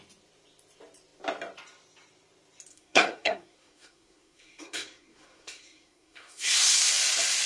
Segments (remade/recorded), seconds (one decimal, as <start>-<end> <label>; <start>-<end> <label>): 0.0-2.7 recorded; 2.7-6.9 remade; 6.9-7.5 recorded